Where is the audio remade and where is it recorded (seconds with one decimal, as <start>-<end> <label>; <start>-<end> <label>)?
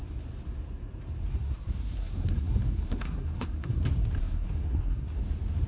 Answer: 0.0-1.3 recorded; 1.3-3.8 remade; 3.8-4.2 recorded; 4.2-5.2 remade; 5.2-5.7 recorded